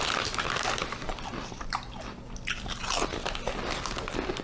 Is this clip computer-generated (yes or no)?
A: no